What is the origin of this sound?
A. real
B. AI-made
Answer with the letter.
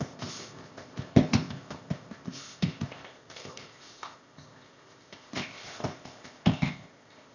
B